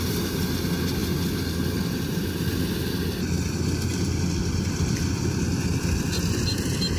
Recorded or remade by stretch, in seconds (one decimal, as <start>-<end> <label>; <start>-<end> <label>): 0.0-7.0 recorded

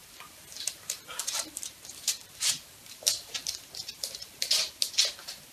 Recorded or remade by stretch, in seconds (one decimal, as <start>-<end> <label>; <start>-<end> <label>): 0.0-3.3 remade; 3.3-3.9 recorded; 3.9-4.4 remade; 4.4-5.5 recorded

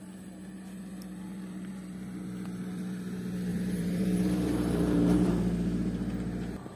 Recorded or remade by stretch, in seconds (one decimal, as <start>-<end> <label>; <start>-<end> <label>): 0.0-3.5 recorded; 3.5-5.3 remade; 5.3-6.8 recorded